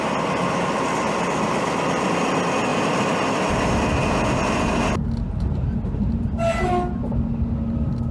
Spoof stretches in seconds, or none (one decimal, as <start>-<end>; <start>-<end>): none